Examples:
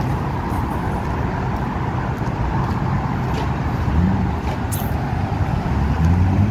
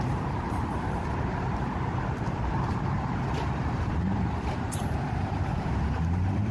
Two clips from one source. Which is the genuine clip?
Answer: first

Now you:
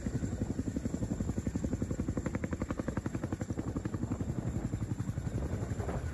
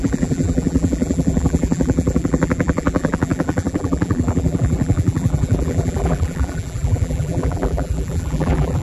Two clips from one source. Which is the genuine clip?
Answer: first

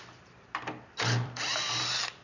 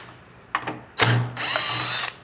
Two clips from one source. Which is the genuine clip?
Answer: second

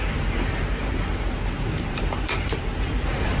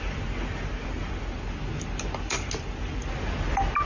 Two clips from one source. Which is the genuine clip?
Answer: second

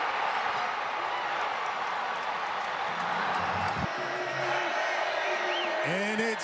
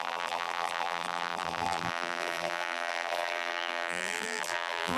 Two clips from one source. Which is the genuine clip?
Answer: first